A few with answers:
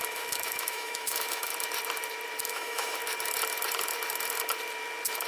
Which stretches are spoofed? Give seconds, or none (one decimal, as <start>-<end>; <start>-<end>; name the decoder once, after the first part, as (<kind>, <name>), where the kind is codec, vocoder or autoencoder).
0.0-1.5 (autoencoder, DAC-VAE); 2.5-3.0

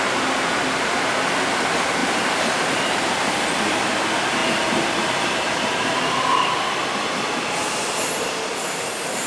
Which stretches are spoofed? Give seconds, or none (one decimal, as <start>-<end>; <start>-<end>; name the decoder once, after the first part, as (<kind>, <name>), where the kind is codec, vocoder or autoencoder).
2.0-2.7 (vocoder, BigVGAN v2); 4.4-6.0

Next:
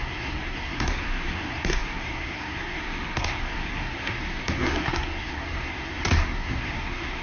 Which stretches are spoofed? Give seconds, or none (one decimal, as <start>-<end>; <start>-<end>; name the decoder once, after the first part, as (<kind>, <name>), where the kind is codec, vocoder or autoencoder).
0.0-7.2 (codec, SNAC)